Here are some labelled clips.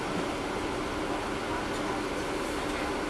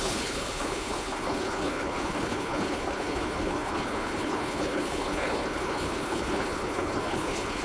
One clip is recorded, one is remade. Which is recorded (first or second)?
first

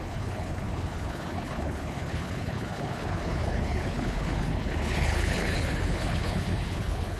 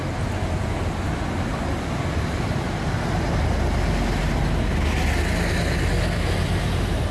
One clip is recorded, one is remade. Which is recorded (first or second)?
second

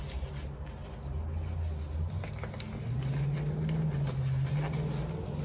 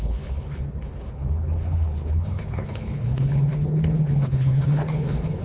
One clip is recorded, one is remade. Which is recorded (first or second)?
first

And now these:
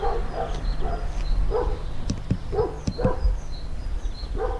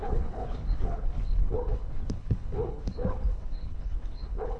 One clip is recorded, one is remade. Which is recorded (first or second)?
first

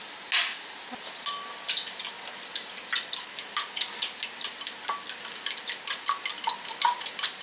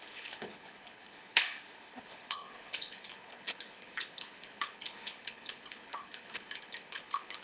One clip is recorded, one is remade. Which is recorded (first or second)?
first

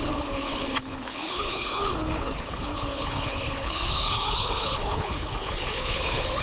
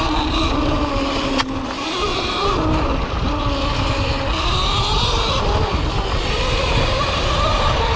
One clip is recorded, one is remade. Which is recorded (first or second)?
second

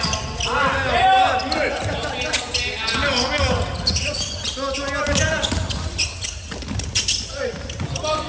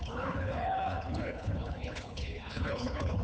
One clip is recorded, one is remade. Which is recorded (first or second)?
first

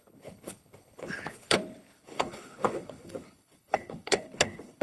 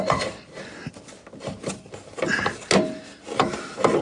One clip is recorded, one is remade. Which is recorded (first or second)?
second